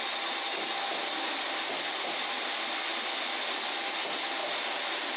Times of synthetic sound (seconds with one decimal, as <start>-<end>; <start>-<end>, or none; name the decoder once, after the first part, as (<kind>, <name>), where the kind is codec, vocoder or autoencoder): none